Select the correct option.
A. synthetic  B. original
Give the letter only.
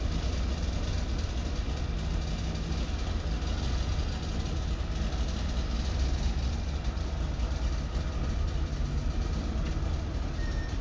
B